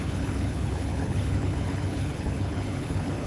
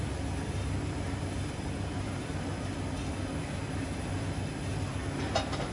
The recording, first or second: second